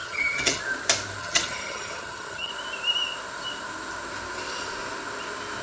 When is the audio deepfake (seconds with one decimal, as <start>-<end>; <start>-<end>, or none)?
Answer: 0.0-0.6; 1.2-2.5